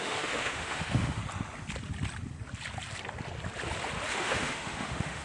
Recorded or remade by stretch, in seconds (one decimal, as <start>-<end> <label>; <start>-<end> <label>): 0.0-1.2 remade; 1.2-4.1 recorded; 4.1-5.2 remade